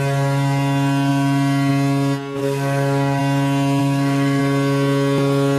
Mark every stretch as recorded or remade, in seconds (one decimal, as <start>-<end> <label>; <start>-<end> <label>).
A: 0.0-2.4 recorded; 2.4-3.2 remade; 3.2-3.8 recorded; 3.8-4.4 remade; 4.4-5.6 recorded